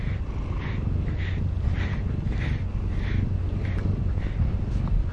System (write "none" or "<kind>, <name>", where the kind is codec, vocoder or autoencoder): none